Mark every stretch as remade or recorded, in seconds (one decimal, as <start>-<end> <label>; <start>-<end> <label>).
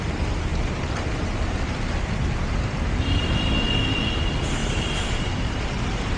0.0-0.5 recorded; 0.5-3.3 remade; 3.3-4.6 recorded; 4.6-6.2 remade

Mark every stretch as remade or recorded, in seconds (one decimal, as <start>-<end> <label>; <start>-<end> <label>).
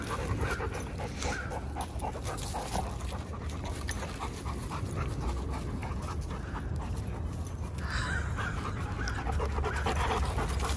0.0-10.8 recorded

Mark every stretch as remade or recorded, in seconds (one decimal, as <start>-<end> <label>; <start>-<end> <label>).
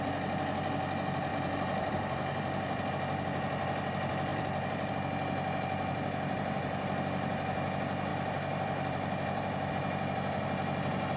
0.0-1.3 recorded; 1.3-2.9 remade; 2.9-4.3 recorded; 4.3-4.9 remade; 4.9-8.1 recorded; 8.1-9.7 remade; 9.7-11.2 recorded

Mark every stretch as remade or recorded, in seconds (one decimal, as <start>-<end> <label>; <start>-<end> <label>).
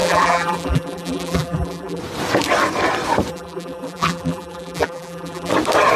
0.0-2.0 remade; 2.0-3.3 recorded; 3.3-5.5 remade; 5.5-6.0 recorded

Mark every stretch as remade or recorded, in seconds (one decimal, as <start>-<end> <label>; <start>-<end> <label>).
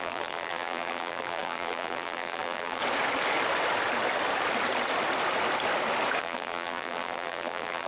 0.0-2.8 remade; 2.8-6.2 recorded; 6.2-7.9 remade